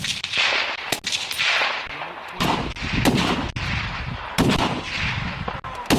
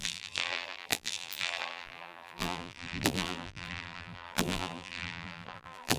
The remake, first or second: second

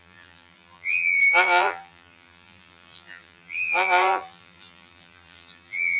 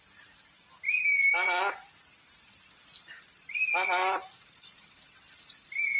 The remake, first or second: first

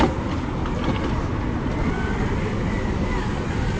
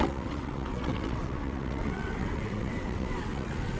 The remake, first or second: second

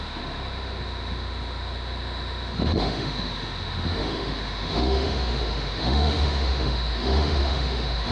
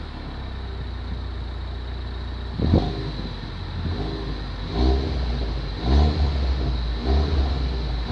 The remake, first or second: first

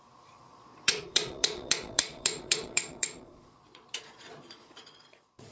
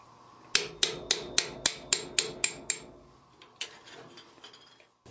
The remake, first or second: first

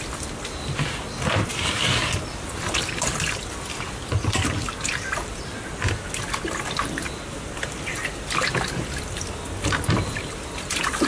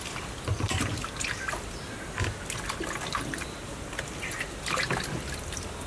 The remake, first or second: first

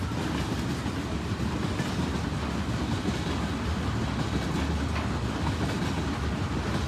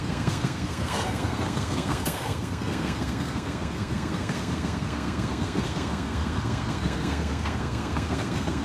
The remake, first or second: second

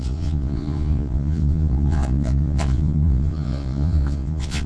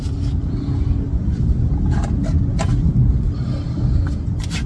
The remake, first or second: first